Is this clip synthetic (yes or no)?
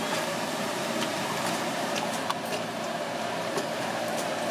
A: yes